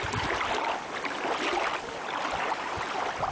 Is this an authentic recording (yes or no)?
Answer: yes